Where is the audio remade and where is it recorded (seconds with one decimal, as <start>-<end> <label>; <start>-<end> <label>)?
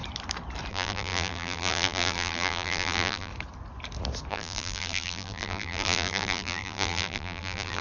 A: 0.0-0.7 recorded; 0.7-3.3 remade; 3.3-4.3 recorded; 4.3-7.8 remade